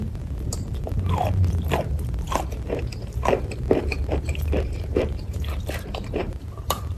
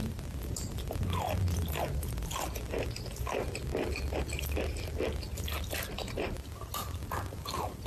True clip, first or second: second